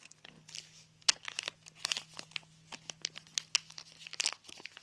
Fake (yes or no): no